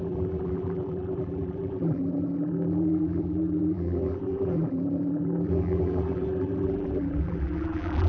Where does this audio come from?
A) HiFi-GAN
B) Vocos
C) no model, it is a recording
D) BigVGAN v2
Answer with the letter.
D